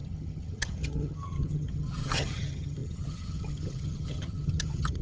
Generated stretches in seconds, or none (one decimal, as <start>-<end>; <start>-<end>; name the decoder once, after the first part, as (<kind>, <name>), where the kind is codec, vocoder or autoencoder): 0.0-5.0 (vocoder, HiFi-GAN)

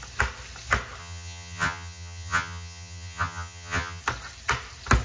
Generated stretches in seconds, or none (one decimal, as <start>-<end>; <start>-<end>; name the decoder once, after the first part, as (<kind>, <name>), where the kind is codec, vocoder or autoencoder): 1.0-4.0 (vocoder, HiFi-GAN)